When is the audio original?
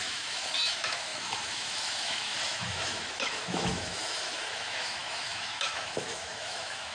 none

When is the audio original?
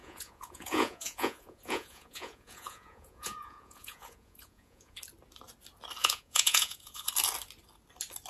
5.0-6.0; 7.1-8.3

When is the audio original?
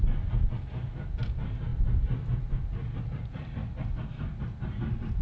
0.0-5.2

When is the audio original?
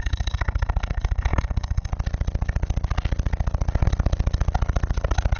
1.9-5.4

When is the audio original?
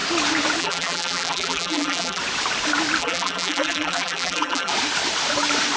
0.0-0.6; 2.2-3.0; 4.7-5.8